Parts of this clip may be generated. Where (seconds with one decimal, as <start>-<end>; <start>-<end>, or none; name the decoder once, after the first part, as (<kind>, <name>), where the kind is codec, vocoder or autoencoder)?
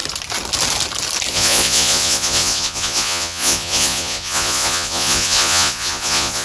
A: 1.3-6.4 (vocoder, Vocos)